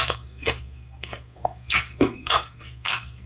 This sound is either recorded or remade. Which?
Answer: remade